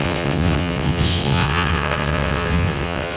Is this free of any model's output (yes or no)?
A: no